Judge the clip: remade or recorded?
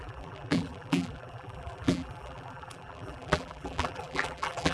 remade